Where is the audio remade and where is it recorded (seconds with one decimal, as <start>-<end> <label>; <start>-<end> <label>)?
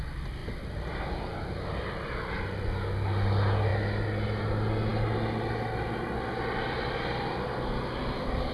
0.0-8.5 recorded